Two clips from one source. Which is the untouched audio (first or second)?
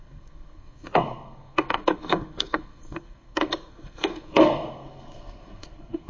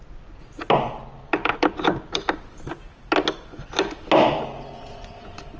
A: second